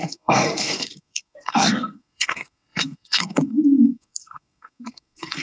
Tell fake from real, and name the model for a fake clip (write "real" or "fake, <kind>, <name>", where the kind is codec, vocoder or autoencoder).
fake, codec, SNAC